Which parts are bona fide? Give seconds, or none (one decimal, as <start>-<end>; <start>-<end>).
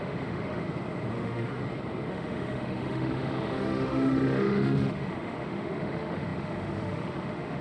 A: 0.6-1.1; 1.6-2.1